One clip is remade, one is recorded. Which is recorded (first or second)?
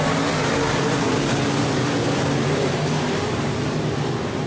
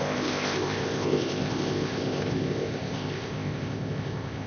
first